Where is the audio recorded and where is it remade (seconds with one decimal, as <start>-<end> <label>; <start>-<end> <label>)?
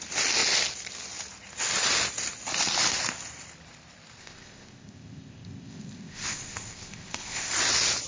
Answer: 0.0-4.2 recorded; 4.2-7.5 remade; 7.5-8.1 recorded